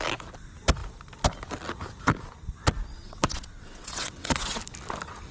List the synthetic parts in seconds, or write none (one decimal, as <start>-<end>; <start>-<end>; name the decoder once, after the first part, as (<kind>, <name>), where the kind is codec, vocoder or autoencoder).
2.9-4.6 (vocoder, WaveNeXt)